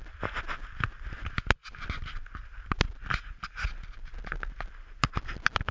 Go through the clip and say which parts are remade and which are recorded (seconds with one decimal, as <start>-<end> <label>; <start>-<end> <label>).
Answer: 0.0-5.7 recorded